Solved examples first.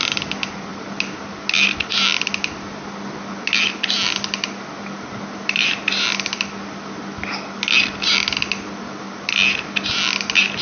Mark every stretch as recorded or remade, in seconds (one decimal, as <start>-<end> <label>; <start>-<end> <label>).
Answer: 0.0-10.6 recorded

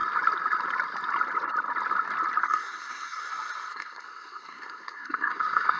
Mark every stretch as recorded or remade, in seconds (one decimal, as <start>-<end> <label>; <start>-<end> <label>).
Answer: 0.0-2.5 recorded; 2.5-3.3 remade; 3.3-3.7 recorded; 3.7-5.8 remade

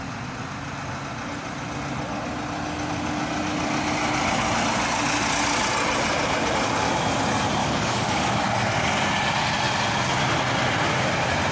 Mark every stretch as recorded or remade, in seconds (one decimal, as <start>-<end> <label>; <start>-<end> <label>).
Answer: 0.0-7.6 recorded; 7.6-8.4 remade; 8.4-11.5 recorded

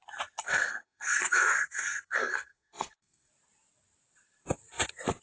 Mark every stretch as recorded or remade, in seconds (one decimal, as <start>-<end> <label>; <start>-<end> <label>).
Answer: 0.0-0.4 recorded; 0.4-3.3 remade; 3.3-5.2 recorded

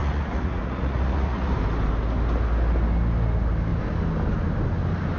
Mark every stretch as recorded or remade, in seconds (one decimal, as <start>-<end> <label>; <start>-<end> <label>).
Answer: 0.0-1.5 remade; 1.5-5.2 recorded